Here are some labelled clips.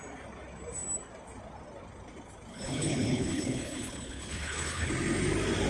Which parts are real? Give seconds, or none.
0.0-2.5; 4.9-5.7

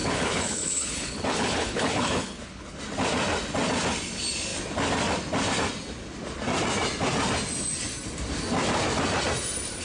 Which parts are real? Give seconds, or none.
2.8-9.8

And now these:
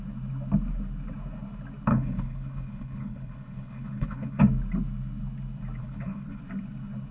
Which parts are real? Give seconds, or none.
0.0-1.9; 4.4-5.8; 6.4-7.1

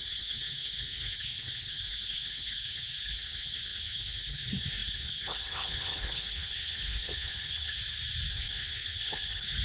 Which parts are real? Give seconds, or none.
7.8-8.3

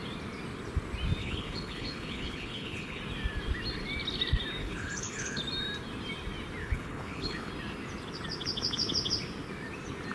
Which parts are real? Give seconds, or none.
0.0-1.2; 3.0-4.6; 5.4-6.6; 7.5-10.1

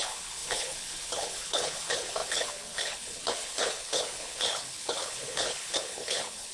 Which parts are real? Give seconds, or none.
none